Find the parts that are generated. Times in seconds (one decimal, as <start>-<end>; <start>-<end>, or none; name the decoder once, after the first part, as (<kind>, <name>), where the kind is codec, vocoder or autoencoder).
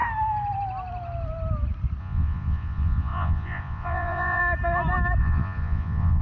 2.0-4.4 (vocoder, Vocos); 5.2-6.2